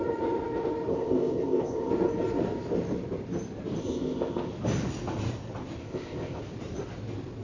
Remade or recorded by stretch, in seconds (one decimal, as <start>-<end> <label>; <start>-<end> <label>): 0.0-0.9 recorded; 0.9-1.9 remade; 1.9-3.8 recorded; 3.8-4.5 remade; 4.5-5.8 recorded; 5.8-6.4 remade; 6.4-7.4 recorded